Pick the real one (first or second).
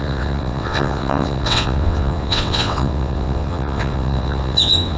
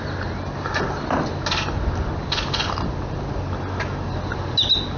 second